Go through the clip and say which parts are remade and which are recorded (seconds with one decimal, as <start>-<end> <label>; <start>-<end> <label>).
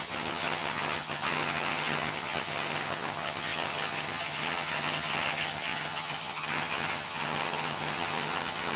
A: 0.0-8.8 remade